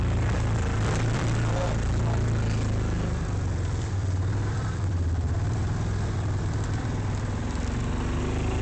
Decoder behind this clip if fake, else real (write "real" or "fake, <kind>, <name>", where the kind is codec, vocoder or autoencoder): fake, vocoder, BigVGAN v2